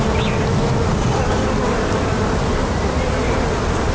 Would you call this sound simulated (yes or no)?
no